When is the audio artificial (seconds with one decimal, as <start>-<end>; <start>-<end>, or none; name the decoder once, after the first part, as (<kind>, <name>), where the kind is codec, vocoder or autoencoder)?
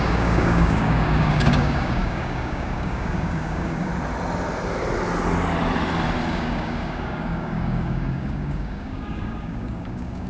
0.0-3.9 (codec, DAC); 6.3-10.3